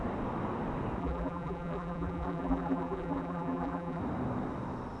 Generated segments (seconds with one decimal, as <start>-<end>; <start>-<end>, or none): 1.0-4.0